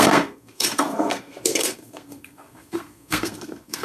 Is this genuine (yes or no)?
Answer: no